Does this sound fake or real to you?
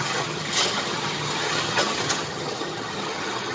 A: fake